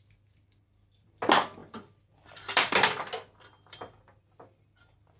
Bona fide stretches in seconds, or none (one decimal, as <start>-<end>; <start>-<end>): 0.0-1.6; 4.0-5.2